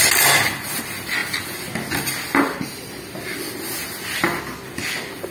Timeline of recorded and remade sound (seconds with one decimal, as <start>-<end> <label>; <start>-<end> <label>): 0.0-5.3 recorded